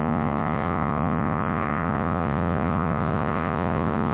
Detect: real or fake fake